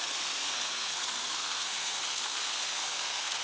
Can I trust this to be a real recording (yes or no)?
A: no